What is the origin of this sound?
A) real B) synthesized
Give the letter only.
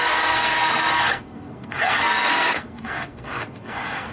B